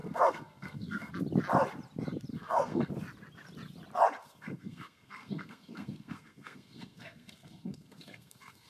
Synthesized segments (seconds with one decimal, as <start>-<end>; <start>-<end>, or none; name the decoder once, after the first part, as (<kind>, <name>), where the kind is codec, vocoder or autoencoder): 0.0-1.1 (codec, SNAC); 2.3-2.9; 4.2-8.7